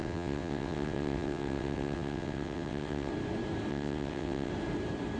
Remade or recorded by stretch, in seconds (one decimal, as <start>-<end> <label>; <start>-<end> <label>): 0.0-3.1 remade; 3.1-3.7 recorded; 3.7-4.5 remade; 4.5-5.2 recorded